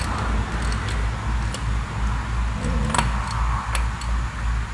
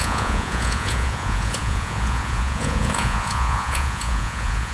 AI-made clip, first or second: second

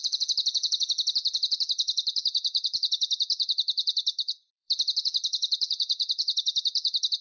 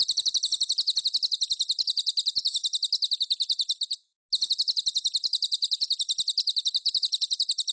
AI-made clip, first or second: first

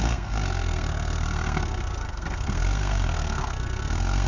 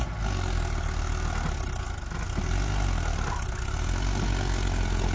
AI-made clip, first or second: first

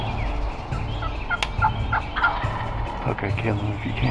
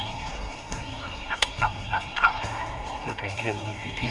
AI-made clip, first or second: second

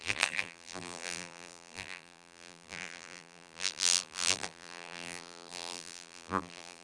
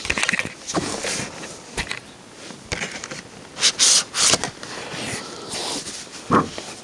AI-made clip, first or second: first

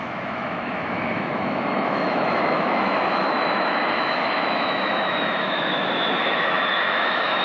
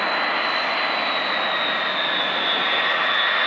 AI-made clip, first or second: first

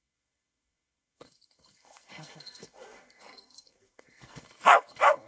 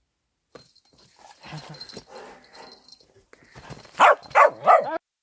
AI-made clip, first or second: first